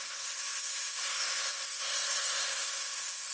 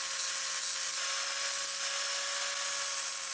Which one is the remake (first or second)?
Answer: first